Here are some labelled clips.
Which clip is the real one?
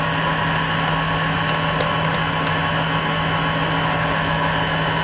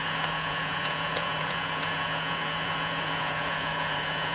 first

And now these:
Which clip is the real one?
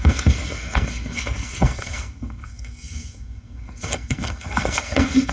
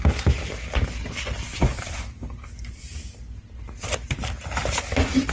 second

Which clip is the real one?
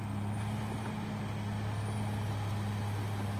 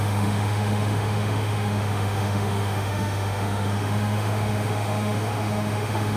first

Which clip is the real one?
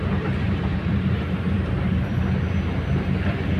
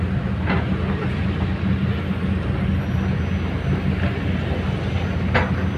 second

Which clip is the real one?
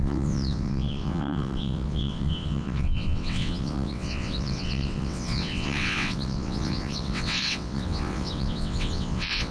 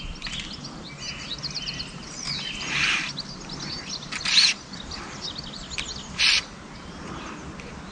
second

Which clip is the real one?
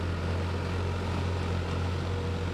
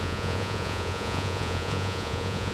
first